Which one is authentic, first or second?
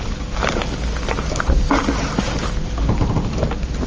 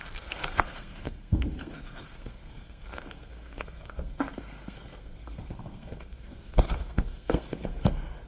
first